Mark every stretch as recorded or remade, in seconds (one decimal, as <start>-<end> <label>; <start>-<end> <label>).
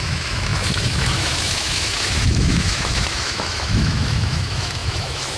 0.0-5.4 remade